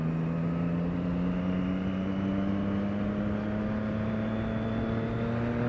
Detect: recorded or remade recorded